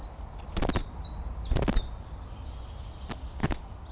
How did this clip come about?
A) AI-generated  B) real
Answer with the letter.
B